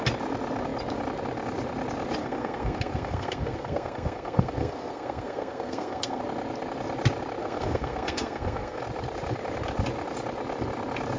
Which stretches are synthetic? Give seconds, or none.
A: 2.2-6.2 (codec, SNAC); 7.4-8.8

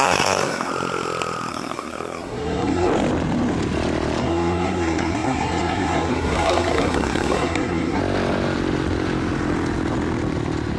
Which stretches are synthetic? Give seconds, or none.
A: 0.0-0.7 (codec, SNAC); 1.5-2.9; 4.2-8.0

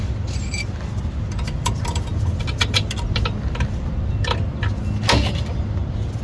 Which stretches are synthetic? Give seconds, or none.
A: none

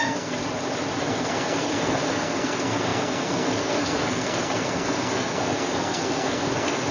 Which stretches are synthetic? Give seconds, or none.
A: 0.0-0.4 (codec, SNAC); 1.0-6.9